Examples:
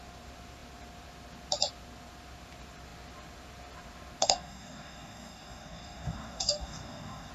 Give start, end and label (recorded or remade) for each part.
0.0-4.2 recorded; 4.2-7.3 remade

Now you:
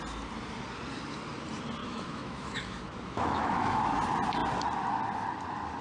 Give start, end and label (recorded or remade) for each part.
0.0-1.8 recorded; 1.8-3.8 remade; 3.8-5.8 recorded

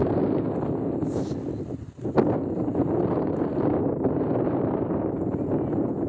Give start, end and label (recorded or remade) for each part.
0.0-1.1 remade; 1.1-3.5 recorded; 3.5-4.9 remade; 4.9-6.1 recorded

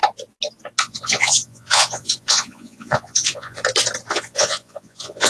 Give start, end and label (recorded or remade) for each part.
0.0-0.8 recorded; 0.8-3.6 remade; 3.6-4.1 recorded; 4.1-5.3 remade

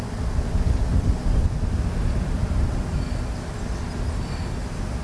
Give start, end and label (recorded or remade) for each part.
0.0-5.0 recorded

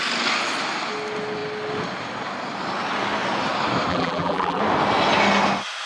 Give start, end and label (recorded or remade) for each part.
0.0-3.9 recorded; 3.9-4.6 remade; 4.6-5.9 recorded

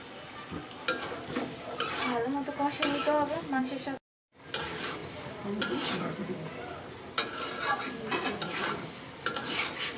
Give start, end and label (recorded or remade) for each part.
0.0-10.0 recorded